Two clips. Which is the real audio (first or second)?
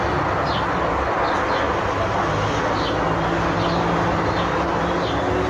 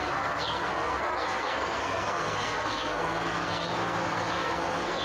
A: first